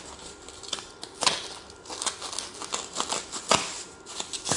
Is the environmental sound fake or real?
real